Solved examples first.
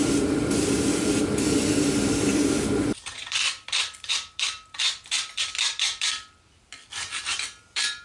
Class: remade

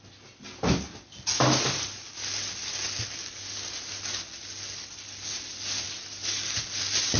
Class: recorded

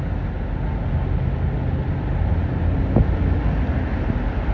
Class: recorded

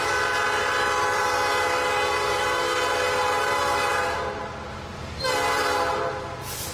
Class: recorded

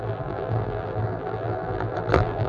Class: remade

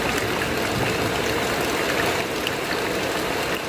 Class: recorded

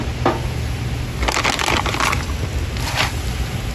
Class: recorded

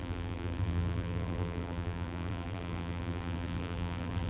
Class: remade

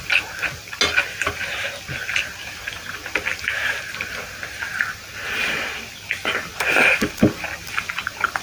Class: recorded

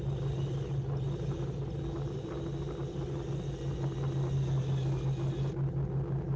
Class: recorded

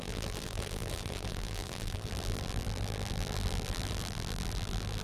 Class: remade